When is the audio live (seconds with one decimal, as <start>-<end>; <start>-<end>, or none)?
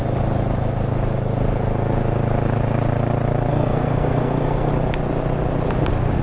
0.0-3.5; 4.7-6.2